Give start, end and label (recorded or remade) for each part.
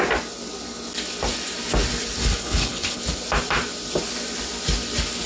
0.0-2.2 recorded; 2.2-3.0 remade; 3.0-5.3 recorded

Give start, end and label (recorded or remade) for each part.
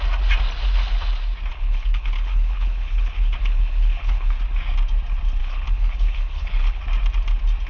0.0-1.5 recorded; 1.5-4.4 remade; 4.4-5.4 recorded; 5.4-6.8 remade; 6.8-7.7 recorded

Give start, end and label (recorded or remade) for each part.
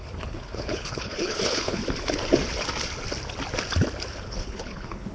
0.0-1.8 remade; 1.8-4.1 recorded; 4.1-5.1 remade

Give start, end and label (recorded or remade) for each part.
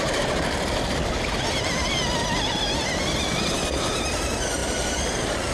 0.0-5.5 recorded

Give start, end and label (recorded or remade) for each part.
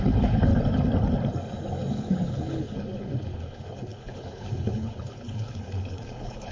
0.0-0.5 remade; 0.5-1.9 recorded; 1.9-6.5 remade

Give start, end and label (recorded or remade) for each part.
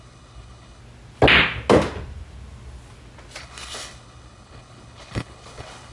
0.0-0.8 remade; 0.8-3.4 recorded; 3.4-5.9 remade